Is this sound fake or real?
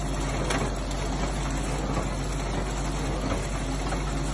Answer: real